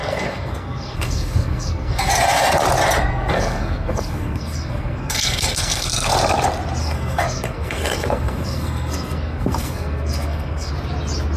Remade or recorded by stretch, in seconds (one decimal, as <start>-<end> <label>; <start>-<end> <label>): 0.0-2.1 remade; 2.1-3.1 recorded; 3.1-6.1 remade; 6.1-6.8 recorded; 6.8-10.7 remade; 10.7-11.4 recorded